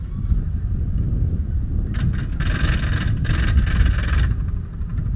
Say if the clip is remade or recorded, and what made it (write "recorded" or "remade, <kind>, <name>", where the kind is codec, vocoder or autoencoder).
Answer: recorded